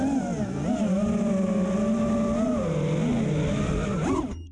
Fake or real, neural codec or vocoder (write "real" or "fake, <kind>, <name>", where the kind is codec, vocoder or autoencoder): real